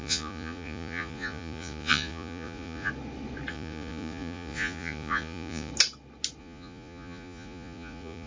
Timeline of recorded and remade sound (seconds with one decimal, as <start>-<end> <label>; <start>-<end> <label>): 0.0-2.9 remade; 2.9-3.5 recorded; 3.5-5.7 remade; 5.7-6.4 recorded; 6.4-8.3 remade